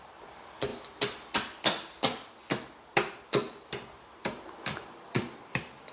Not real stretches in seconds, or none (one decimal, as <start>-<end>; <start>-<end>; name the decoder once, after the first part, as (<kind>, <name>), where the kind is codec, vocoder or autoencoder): 0.0-0.7 (vocoder, BigVGAN v2); 4.2-5.9